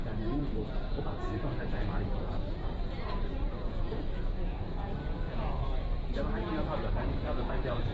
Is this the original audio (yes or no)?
no